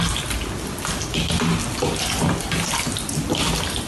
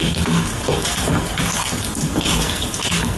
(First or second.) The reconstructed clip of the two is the second